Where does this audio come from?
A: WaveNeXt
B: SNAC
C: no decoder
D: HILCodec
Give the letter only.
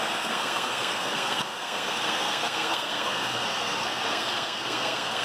B